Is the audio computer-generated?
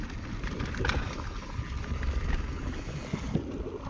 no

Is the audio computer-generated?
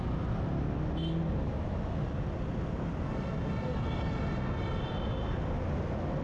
no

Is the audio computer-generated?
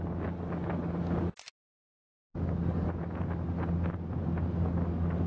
no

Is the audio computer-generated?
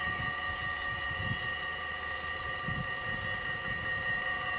no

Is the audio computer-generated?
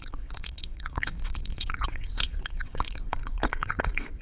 yes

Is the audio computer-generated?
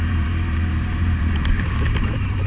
yes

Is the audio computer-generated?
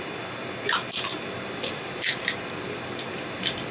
no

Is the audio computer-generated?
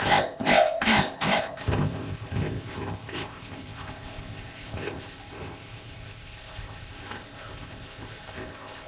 yes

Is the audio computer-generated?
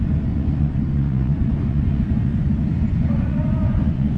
yes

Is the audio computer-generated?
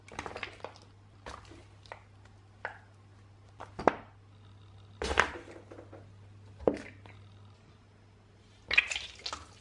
no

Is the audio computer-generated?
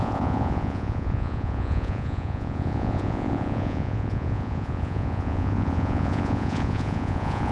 yes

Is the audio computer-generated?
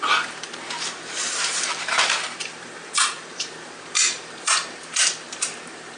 yes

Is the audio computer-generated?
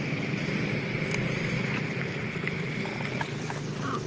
no